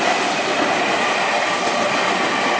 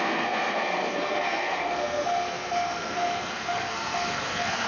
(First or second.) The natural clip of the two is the first